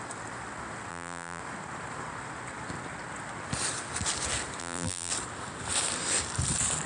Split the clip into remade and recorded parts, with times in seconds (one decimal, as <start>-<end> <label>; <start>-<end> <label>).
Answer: 0.0-0.9 recorded; 0.9-1.4 remade; 1.4-4.6 recorded; 4.6-5.1 remade; 5.1-6.9 recorded